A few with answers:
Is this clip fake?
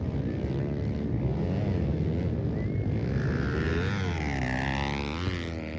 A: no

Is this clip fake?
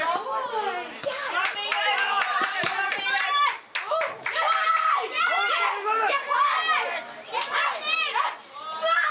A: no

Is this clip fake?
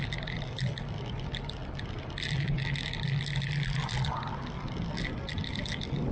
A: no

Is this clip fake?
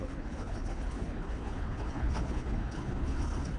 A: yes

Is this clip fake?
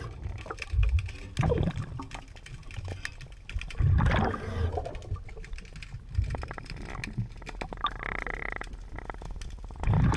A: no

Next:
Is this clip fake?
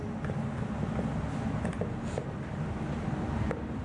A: no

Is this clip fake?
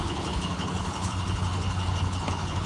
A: yes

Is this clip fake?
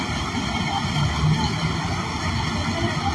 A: no